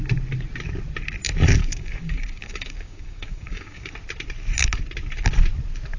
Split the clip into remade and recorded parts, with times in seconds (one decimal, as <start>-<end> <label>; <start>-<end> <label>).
0.0-1.6 recorded; 1.6-3.9 remade; 3.9-6.0 recorded